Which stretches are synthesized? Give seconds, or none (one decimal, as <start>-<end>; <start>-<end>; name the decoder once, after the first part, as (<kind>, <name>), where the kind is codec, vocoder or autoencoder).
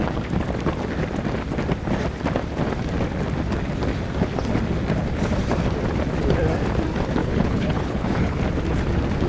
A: 7.2-8.4 (codec, HILCodec)